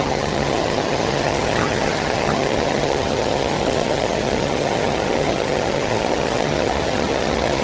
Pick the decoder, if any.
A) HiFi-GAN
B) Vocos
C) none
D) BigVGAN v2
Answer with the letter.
A